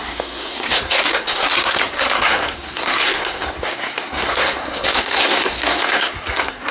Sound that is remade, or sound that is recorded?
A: remade